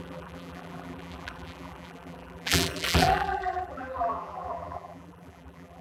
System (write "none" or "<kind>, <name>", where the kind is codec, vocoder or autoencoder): vocoder, BigVGAN v2